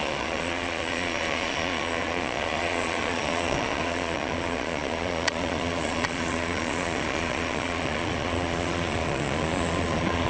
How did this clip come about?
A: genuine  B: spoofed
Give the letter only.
B